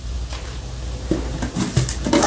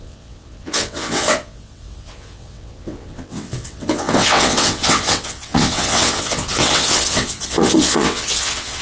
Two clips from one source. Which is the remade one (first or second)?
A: second